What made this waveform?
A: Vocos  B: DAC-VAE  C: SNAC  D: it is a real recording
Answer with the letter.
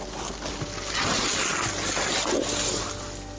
D